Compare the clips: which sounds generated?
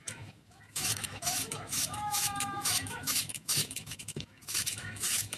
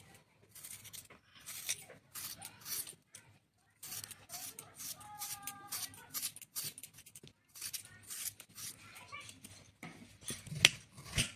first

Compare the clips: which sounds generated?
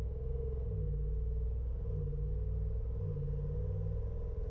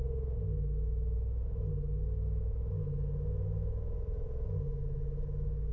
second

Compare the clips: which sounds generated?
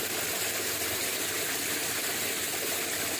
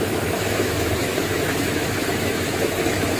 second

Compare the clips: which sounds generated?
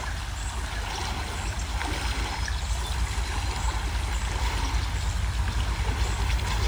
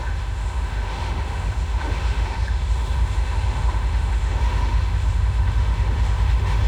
second